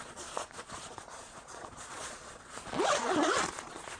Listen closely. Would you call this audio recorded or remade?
remade